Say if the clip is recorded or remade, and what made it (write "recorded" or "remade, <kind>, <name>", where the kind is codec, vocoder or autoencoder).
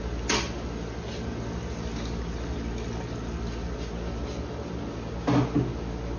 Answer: recorded